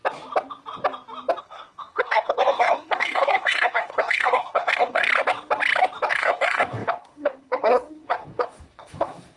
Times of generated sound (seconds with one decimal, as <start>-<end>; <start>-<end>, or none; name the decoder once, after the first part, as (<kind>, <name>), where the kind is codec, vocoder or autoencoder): 1.4-5.1 (codec, SNAC); 6.1-9.4